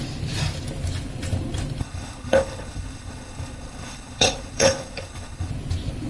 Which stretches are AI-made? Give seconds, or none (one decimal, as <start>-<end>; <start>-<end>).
1.8-5.5